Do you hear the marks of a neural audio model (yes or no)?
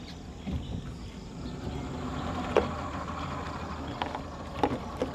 no